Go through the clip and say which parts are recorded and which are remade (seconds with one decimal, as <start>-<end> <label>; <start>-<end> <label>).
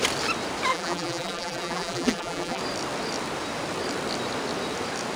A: 0.0-0.7 recorded; 0.7-2.6 remade; 2.6-5.2 recorded